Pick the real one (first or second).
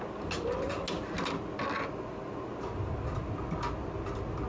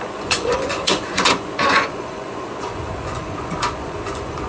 first